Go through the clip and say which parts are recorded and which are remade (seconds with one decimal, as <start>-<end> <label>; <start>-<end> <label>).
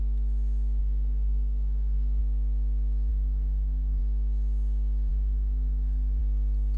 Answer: 0.0-0.8 recorded; 0.8-2.2 remade; 2.2-3.1 recorded; 3.1-4.0 remade; 4.0-5.1 recorded; 5.1-6.2 remade; 6.2-6.8 recorded